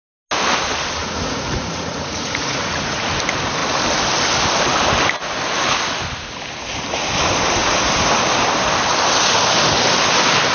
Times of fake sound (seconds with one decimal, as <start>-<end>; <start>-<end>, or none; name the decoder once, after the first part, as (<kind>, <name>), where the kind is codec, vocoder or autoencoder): 1.0-3.1 (vocoder, Vocos)